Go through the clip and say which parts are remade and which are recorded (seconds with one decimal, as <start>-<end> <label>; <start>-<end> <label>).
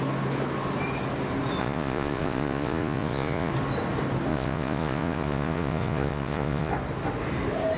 0.0-1.6 recorded; 1.6-3.5 remade; 3.5-4.3 recorded; 4.3-6.7 remade; 6.7-7.8 recorded